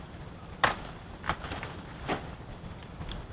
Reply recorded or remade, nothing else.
recorded